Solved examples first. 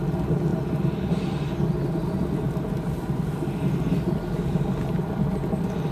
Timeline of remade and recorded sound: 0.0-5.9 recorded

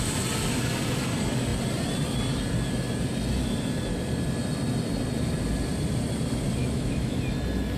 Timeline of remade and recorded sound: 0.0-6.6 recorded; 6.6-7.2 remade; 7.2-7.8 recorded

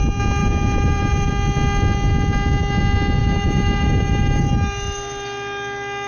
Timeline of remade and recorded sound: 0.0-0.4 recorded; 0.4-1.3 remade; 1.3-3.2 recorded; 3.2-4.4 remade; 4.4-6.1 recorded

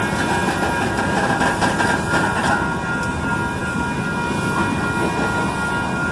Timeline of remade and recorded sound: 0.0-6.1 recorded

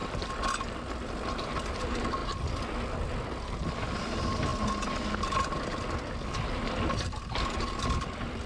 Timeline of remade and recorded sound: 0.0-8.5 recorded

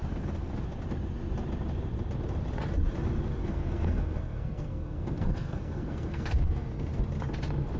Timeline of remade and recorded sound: 0.0-3.4 recorded; 3.4-7.0 remade; 7.0-7.8 recorded

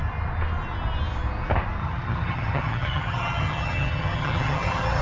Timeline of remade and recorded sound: 0.0-1.8 recorded; 1.8-5.0 remade

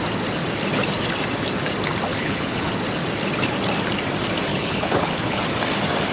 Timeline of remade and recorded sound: 0.0-2.1 recorded; 2.1-2.7 remade; 2.7-4.5 recorded; 4.5-5.4 remade; 5.4-6.1 recorded